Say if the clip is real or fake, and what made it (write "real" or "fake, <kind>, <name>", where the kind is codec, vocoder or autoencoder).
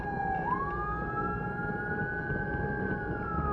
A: real